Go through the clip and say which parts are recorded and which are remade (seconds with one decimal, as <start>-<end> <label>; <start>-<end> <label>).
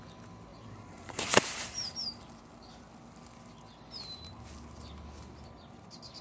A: 0.0-0.5 recorded; 0.5-2.8 remade; 2.8-6.2 recorded